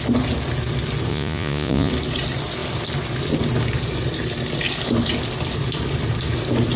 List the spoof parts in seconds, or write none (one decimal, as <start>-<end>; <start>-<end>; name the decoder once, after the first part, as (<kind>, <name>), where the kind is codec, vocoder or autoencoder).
1.1-1.9 (vocoder, Vocos)